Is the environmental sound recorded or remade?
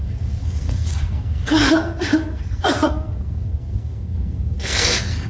remade